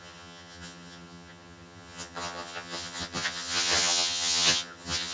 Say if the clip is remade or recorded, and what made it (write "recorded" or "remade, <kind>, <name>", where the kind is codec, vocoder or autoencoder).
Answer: remade, vocoder, HiFi-GAN